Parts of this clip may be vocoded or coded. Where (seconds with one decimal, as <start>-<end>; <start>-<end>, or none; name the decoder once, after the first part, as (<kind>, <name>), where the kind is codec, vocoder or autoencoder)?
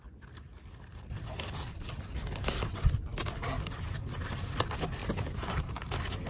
5.0-5.7 (vocoder, BigVGAN v2)